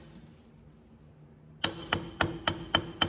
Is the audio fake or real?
real